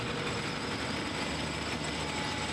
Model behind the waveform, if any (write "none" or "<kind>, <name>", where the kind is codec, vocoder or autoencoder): none